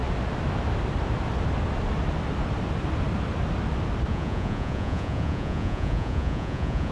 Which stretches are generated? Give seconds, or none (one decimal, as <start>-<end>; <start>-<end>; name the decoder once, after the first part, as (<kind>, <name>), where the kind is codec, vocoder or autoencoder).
4.1-6.9 (vocoder, Vocos)